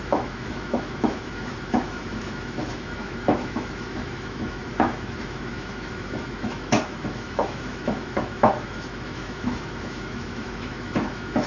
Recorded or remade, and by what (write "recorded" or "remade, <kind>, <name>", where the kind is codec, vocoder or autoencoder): remade, autoencoder, DAC-VAE